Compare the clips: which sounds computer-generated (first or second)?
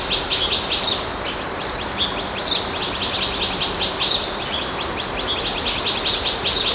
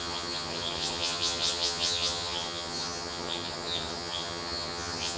second